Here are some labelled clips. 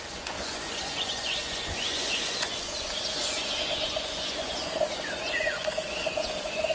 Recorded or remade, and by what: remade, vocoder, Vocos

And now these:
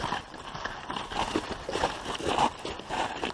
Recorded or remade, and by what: remade, vocoder, BigVGAN v2